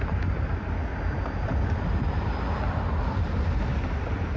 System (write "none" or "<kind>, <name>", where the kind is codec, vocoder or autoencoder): none